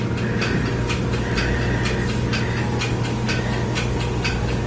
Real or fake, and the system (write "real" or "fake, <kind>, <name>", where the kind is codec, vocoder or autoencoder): real